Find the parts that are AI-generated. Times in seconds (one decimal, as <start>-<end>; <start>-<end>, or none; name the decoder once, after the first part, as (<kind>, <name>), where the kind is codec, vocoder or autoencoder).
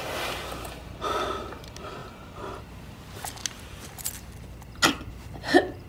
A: none